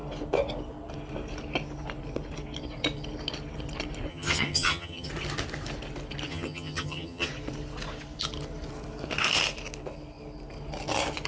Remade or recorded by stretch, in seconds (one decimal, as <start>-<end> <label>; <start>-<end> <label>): 0.0-4.1 recorded; 4.1-5.1 remade; 5.1-6.3 recorded; 6.3-7.3 remade; 7.3-11.3 recorded